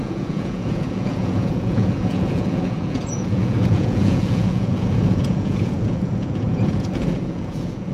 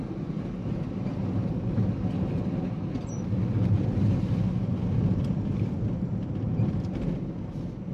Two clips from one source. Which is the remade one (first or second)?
first